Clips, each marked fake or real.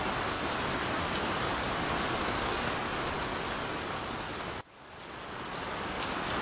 real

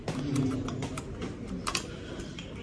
real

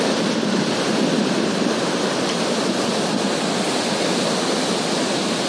real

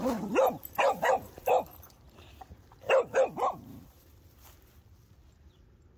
real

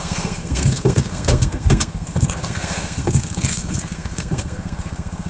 fake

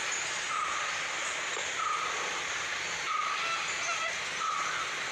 real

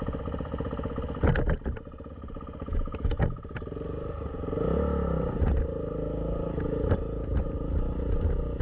real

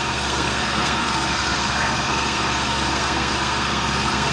fake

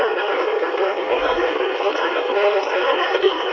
fake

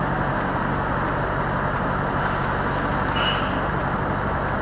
real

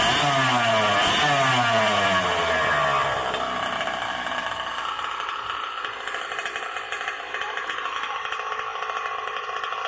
real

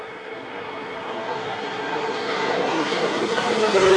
fake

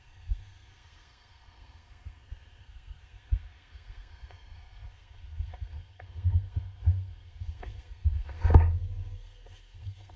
fake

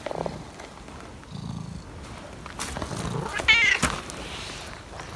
real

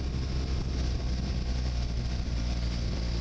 real